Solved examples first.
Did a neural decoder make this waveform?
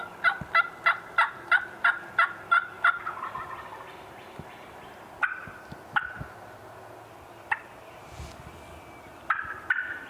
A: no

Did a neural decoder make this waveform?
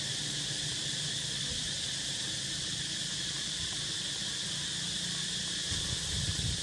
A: no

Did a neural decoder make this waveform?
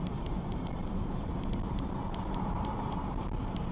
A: yes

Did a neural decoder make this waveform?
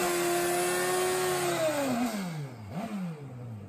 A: no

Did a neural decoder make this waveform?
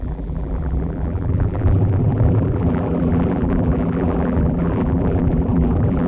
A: yes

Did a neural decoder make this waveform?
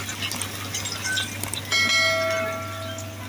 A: no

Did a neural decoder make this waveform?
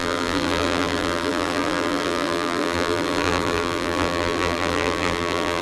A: yes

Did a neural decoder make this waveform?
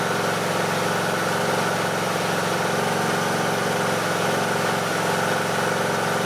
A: no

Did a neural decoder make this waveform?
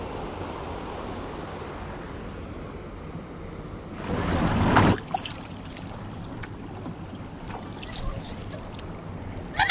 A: no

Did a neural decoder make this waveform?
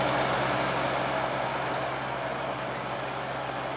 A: no